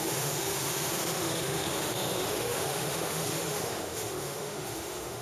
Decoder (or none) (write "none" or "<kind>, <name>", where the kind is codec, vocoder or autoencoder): autoencoder, DAC-VAE